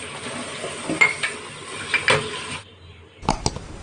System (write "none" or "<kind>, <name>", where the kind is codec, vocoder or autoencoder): none